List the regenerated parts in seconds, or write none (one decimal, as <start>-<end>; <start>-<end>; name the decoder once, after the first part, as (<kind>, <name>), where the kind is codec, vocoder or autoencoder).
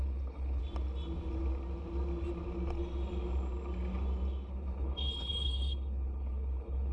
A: 0.0-0.6 (codec, HILCodec); 4.5-6.9